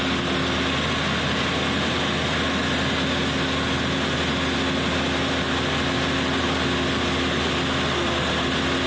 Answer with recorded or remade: recorded